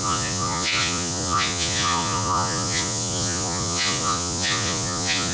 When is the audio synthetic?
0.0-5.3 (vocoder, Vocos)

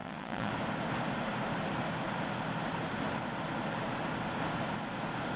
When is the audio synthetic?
0.0-0.5 (vocoder, Vocos)

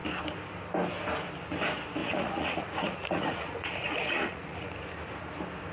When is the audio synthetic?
2.0-4.7 (vocoder, Vocos)

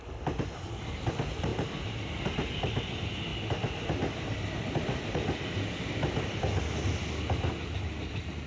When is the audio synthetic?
none

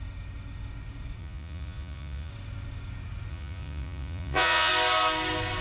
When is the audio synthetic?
1.2-2.3 (vocoder, Vocos); 3.3-4.7

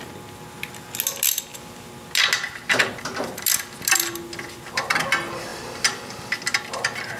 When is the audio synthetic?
none